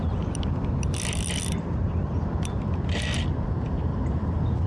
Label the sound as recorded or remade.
recorded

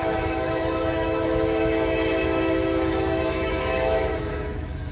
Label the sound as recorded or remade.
remade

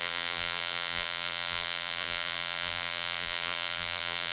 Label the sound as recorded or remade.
remade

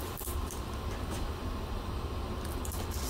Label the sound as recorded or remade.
recorded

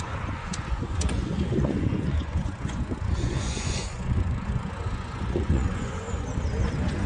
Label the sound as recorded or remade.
remade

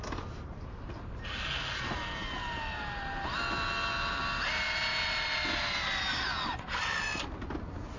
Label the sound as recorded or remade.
recorded